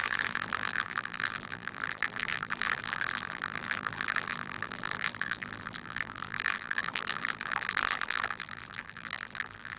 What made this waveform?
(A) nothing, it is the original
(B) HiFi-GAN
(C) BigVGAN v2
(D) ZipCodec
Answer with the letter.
C